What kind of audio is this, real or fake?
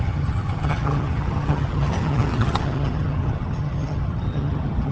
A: fake